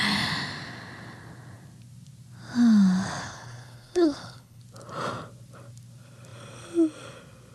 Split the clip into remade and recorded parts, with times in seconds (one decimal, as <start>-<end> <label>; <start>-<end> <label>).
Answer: 0.0-3.2 recorded; 3.2-4.6 remade; 4.6-7.5 recorded